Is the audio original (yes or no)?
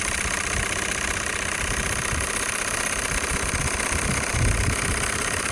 yes